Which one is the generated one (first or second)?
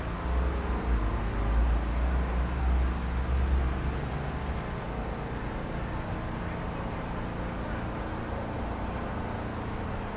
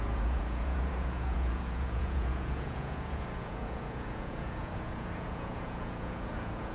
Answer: second